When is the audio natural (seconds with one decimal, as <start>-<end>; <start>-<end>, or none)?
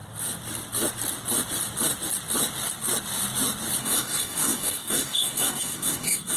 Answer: 0.0-3.8